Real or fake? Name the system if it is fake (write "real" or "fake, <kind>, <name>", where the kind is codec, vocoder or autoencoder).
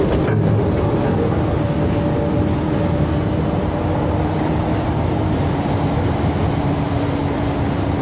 real